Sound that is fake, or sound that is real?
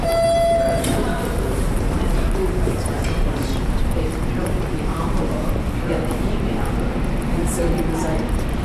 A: fake